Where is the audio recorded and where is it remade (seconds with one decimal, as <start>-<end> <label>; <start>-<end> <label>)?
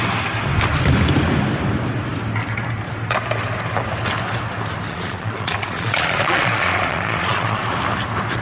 0.0-4.9 recorded; 4.9-7.6 remade; 7.6-8.4 recorded